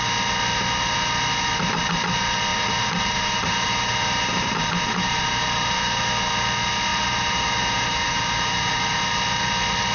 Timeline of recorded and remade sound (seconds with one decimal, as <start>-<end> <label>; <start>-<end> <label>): 0.0-2.5 recorded; 2.5-6.0 remade; 6.0-6.9 recorded; 6.9-9.0 remade; 9.0-9.9 recorded

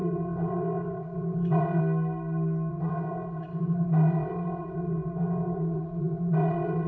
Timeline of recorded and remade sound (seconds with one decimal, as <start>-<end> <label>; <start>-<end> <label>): 0.0-1.8 remade; 1.8-2.7 recorded; 2.7-6.9 remade

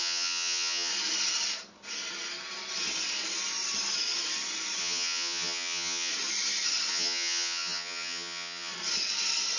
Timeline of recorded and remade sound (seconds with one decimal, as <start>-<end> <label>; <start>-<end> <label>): 0.0-0.9 remade; 0.9-4.8 recorded; 4.8-6.1 remade; 6.1-6.9 recorded; 6.9-8.7 remade; 8.7-9.6 recorded

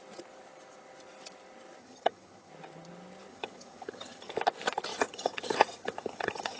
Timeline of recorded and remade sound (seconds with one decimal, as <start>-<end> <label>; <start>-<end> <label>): 0.0-1.8 recorded; 1.8-2.5 remade; 2.5-3.3 recorded; 3.3-4.3 remade; 4.3-4.9 recorded; 4.9-6.6 remade